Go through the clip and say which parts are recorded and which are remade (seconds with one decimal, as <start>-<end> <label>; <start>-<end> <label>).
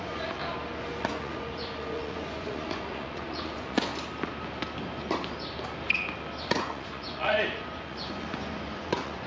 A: 0.0-0.4 remade; 0.4-1.0 recorded; 1.0-3.9 remade; 3.9-6.4 recorded; 6.4-9.3 remade